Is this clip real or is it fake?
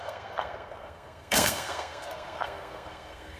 fake